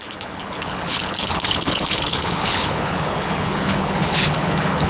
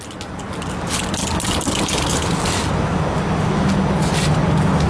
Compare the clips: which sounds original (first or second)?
second